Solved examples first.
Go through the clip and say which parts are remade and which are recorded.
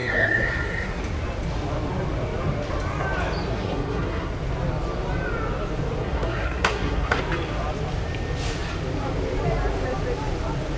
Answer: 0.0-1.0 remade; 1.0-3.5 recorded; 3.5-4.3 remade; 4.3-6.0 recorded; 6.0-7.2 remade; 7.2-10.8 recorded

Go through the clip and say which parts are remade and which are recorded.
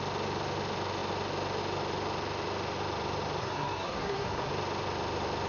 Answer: 0.0-3.4 recorded; 3.4-4.5 remade; 4.5-5.5 recorded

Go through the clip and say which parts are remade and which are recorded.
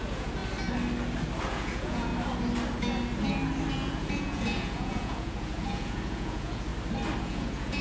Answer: 0.0-0.4 remade; 0.4-1.4 recorded; 1.4-2.1 remade; 2.1-3.7 recorded; 3.7-6.7 remade; 6.7-7.2 recorded; 7.2-7.8 remade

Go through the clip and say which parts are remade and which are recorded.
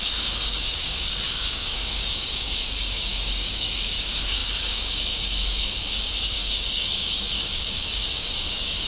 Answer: 0.0-8.9 remade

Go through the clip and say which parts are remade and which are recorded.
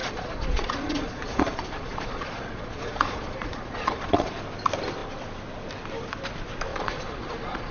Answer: 0.0-4.4 remade; 4.4-6.7 recorded; 6.7-7.7 remade